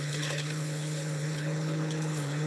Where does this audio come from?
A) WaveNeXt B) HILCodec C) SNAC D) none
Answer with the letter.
B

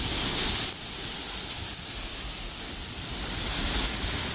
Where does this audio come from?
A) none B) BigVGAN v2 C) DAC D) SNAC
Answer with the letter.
A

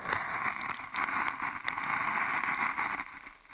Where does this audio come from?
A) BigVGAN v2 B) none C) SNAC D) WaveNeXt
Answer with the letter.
B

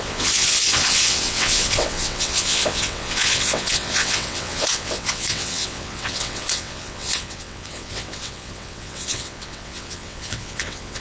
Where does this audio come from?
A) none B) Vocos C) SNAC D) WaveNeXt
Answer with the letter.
D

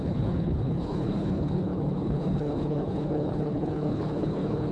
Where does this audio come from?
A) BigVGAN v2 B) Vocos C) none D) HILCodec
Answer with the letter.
D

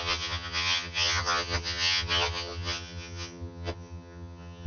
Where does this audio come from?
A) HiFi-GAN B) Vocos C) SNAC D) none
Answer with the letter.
A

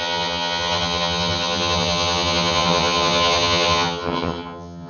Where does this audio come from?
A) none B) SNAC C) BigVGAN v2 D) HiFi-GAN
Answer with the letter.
D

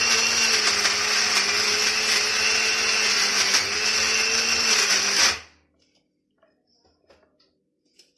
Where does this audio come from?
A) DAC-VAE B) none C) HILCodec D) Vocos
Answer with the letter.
B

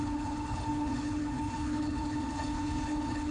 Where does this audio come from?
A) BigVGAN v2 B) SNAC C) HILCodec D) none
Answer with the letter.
C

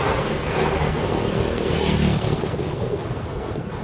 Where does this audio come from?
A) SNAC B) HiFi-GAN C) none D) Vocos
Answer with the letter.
A